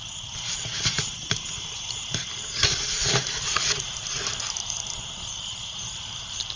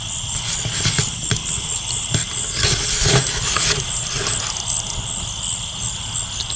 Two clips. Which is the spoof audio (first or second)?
first